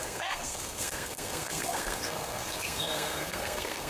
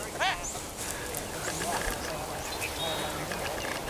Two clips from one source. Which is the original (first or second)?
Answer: second